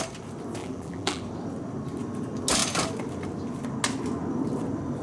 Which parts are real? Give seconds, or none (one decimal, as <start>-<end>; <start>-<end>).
0.0-0.6; 1.2-5.0